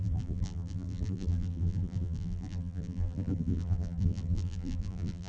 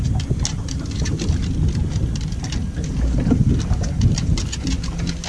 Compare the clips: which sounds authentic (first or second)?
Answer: second